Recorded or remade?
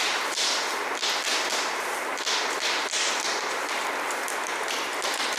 recorded